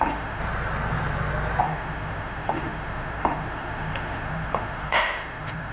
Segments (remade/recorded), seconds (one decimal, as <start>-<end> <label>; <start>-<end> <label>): 0.0-0.4 remade; 0.4-1.6 recorded; 1.6-5.7 remade